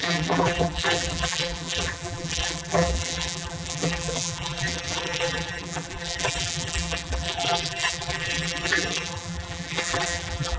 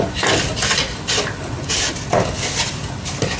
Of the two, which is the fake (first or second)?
first